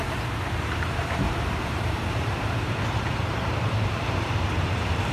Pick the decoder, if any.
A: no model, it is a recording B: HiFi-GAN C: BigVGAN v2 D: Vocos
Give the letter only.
C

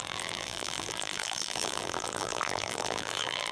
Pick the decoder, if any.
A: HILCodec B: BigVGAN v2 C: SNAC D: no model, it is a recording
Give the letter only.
B